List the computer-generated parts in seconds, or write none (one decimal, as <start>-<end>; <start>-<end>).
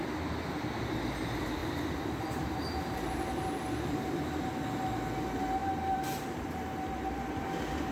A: 1.6-3.5; 5.6-7.5